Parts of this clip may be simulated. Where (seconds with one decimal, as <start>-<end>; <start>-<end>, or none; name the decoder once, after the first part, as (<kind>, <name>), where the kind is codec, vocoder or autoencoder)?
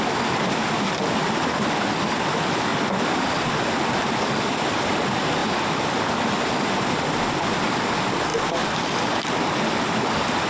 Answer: none